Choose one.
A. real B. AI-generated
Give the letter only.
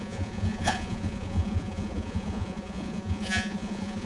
B